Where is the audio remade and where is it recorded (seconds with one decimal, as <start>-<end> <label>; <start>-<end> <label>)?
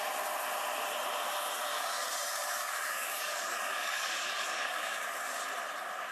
0.0-1.7 recorded; 1.7-5.4 remade; 5.4-6.1 recorded